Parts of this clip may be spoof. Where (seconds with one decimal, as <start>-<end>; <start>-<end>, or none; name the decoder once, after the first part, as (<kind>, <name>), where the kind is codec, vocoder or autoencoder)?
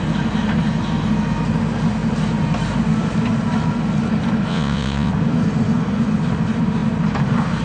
4.5-5.1 (vocoder, Vocos)